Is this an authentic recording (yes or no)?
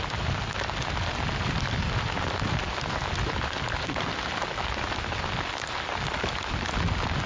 yes